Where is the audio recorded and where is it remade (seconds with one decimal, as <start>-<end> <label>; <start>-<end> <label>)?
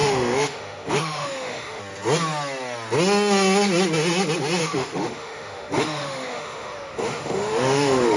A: 0.0-1.8 remade; 1.8-4.6 recorded; 4.6-8.2 remade